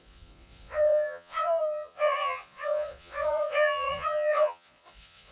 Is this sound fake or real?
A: fake